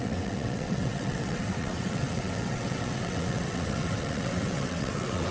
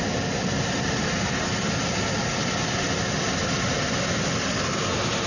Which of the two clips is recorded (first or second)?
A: second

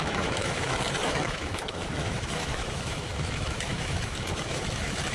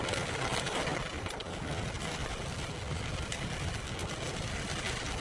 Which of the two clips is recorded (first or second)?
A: second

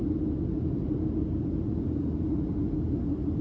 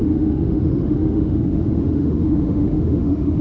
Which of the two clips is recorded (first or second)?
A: first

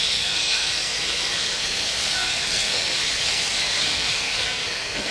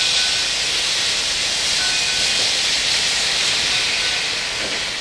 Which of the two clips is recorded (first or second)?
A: second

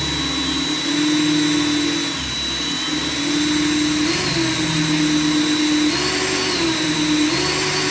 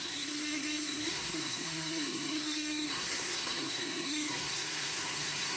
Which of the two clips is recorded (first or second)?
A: first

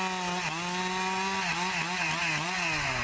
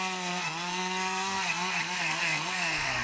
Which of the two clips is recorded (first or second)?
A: first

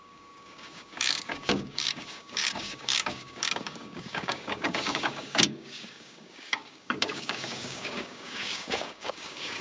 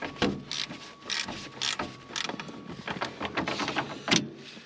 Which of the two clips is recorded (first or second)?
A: second